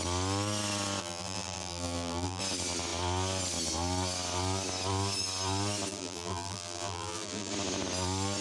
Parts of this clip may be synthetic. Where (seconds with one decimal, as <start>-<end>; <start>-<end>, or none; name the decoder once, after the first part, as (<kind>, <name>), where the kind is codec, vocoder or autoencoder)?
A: 1.0-2.4 (vocoder, BigVGAN v2); 5.9-7.5